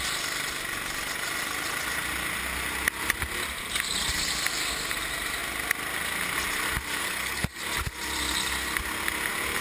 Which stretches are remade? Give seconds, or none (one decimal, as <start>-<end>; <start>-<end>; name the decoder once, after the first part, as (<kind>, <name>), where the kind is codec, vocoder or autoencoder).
7.0-7.6 (codec, SNAC)